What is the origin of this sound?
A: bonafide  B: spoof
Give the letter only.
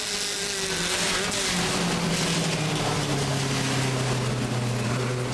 A